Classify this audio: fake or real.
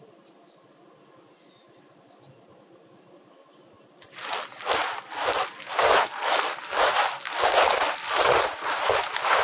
real